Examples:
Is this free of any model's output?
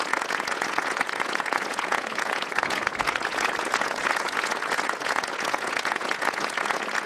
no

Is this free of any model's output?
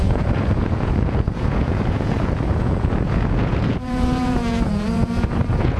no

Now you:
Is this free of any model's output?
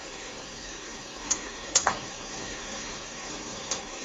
no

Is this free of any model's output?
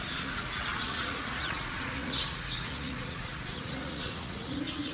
no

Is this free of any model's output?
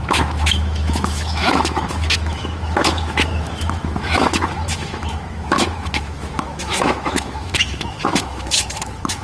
no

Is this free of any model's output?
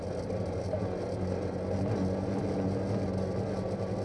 yes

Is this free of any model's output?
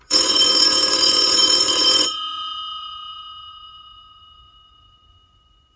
no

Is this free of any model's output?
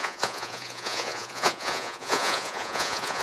no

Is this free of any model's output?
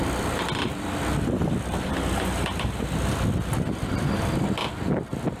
yes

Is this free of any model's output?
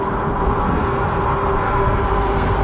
no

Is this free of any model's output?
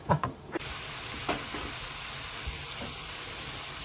yes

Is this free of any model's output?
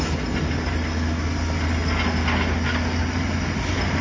yes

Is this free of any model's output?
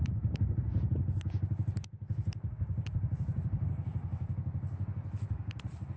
yes